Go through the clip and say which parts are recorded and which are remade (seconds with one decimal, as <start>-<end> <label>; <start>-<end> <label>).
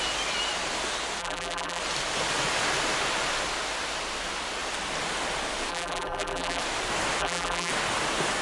0.0-1.2 recorded; 1.2-1.8 remade; 1.8-5.7 recorded; 5.7-6.6 remade; 6.6-7.2 recorded; 7.2-7.7 remade; 7.7-8.4 recorded